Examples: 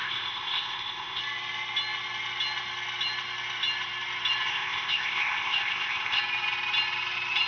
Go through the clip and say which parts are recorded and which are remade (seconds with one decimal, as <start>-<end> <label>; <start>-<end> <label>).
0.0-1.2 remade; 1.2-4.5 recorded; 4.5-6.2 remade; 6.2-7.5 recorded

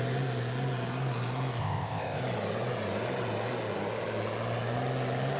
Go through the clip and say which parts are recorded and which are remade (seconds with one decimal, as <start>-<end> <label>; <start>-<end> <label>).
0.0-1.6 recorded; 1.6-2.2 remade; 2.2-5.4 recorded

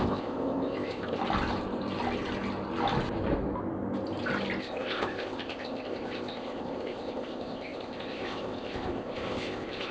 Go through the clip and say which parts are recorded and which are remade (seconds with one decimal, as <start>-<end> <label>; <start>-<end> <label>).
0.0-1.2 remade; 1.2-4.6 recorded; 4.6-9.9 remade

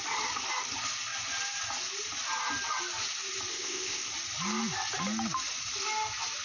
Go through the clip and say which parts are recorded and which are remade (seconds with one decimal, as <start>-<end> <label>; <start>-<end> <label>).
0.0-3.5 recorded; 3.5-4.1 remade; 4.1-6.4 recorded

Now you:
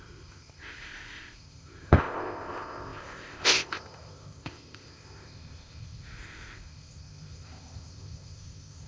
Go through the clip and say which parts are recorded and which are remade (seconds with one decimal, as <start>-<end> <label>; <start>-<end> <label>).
0.0-8.9 remade